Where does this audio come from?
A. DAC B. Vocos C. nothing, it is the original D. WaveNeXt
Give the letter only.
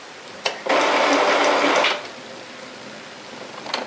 C